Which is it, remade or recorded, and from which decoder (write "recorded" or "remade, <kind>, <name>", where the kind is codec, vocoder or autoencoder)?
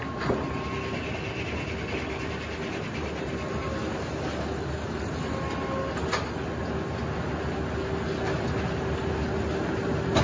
recorded